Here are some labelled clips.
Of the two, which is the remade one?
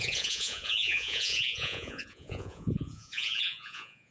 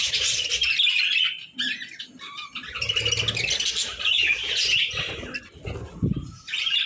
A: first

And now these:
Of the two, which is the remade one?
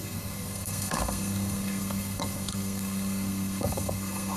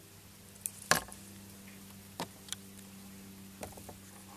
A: first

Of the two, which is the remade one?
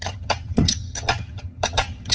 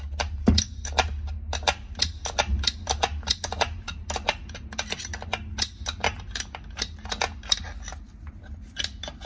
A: first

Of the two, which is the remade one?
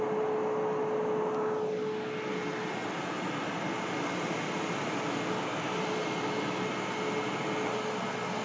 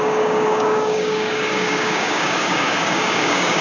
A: second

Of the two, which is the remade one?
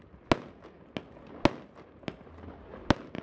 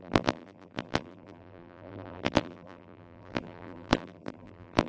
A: second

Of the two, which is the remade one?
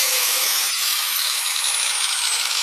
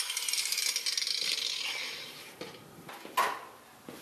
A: first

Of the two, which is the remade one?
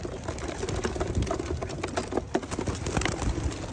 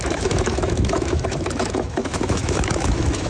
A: second